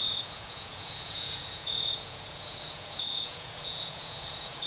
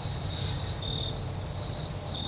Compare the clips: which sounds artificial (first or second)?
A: first